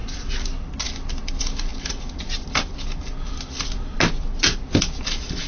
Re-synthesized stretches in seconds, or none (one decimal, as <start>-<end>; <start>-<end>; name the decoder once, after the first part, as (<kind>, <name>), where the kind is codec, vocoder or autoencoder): 1.2-3.9 (vocoder, BigVGAN v2); 4.7-5.5